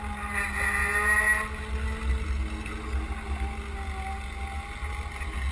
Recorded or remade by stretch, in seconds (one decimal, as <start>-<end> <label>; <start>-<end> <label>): 0.0-5.5 recorded